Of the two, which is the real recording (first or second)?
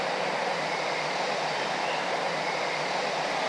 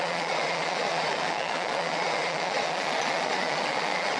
first